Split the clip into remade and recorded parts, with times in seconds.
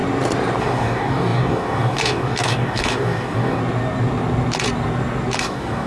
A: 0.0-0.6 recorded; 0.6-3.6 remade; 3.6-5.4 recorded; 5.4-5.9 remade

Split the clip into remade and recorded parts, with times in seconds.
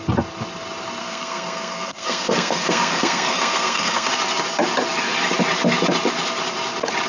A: 0.0-1.0 recorded; 1.0-4.1 remade; 4.1-7.1 recorded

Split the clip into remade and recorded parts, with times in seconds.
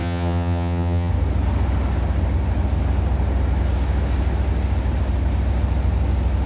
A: 0.0-1.1 remade; 1.1-6.5 recorded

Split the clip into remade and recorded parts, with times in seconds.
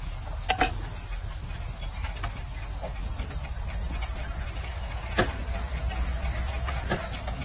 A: 0.0-3.0 recorded; 3.0-4.8 remade; 4.8-7.4 recorded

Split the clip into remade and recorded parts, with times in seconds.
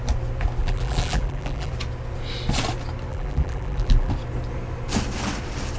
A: 0.0-0.6 recorded; 0.6-1.7 remade; 1.7-3.1 recorded; 3.1-4.1 remade; 4.1-5.8 recorded